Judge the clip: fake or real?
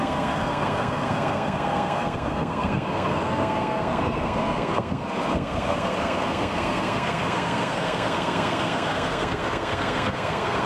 fake